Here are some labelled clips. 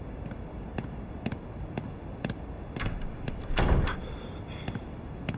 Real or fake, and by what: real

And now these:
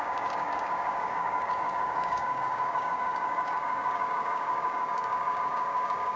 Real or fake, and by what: fake, codec, DAC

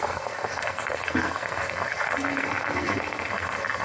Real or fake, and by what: fake, codec, SNAC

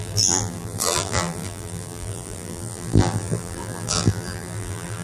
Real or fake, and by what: fake, vocoder, BigVGAN v2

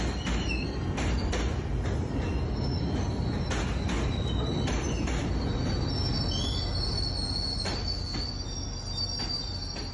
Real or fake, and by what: real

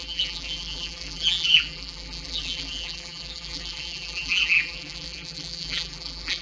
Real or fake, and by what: fake, vocoder, BigVGAN v2